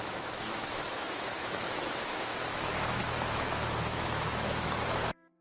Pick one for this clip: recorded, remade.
remade